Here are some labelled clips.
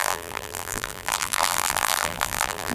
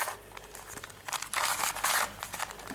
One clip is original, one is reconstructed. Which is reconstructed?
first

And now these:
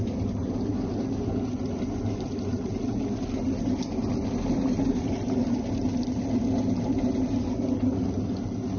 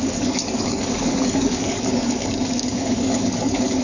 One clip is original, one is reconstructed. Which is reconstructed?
second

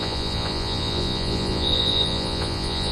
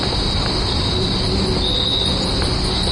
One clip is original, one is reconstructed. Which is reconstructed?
first